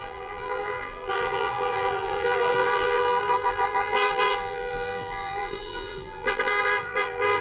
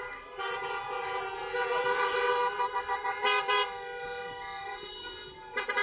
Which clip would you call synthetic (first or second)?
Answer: first